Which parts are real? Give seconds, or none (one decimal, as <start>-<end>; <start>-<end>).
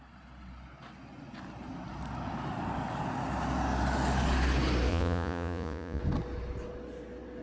0.0-4.9; 6.0-7.4